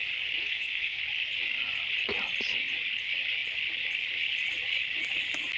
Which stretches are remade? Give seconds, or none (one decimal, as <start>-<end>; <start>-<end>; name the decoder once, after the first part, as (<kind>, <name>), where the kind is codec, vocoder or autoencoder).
0.4-1.0 (codec, SNAC)